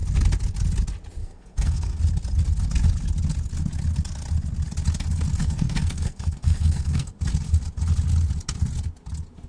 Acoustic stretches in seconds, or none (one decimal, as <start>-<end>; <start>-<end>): 0.0-1.2; 2.0-5.4; 7.1-9.5